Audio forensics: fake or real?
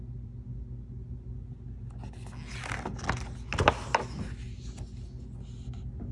real